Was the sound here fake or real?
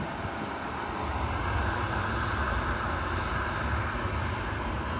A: real